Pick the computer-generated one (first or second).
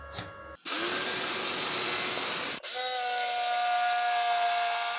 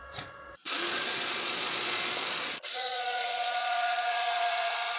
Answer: second